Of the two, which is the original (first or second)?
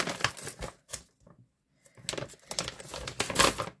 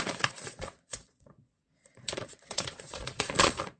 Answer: first